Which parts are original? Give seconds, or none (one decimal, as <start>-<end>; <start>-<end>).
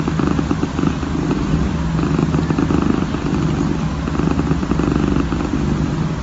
0.0-6.2